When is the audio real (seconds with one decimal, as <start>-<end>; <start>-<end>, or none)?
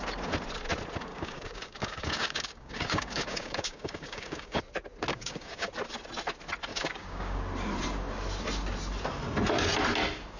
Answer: 0.0-1.1; 4.6-5.1; 5.7-6.7; 7.4-10.4